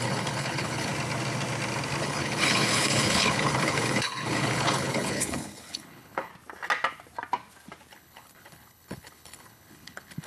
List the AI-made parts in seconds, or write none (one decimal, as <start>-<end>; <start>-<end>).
0.0-0.9; 2.0-6.3; 7.9-10.3